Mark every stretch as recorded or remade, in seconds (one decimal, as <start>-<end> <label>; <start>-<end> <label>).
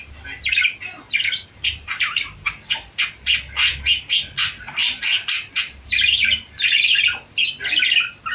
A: 0.0-1.7 recorded; 1.7-2.5 remade; 2.5-4.8 recorded; 4.8-7.0 remade; 7.0-8.3 recorded